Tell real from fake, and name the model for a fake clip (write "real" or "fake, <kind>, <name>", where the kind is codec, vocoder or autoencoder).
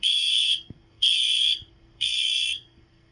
fake, codec, SNAC